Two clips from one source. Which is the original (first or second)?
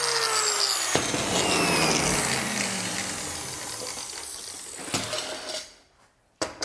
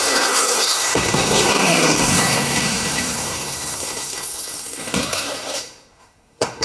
first